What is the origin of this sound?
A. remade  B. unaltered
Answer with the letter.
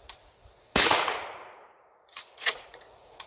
A